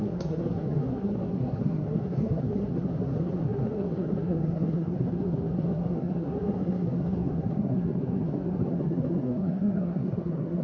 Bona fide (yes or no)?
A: no